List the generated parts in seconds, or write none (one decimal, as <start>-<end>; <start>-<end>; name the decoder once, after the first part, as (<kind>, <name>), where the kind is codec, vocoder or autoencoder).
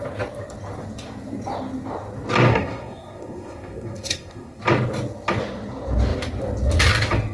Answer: 2.5-4.6 (codec, SNAC)